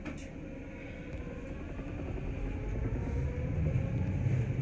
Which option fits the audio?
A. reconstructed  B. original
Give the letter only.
B